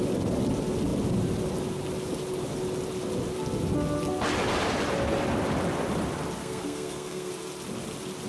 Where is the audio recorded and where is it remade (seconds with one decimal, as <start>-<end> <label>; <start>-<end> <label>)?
0.0-6.4 recorded; 6.4-7.3 remade; 7.3-8.3 recorded